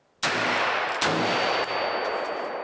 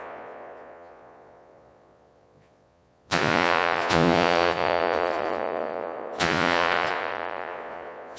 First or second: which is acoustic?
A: first